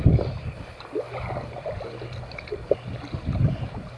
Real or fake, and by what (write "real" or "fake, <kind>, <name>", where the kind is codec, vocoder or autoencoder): real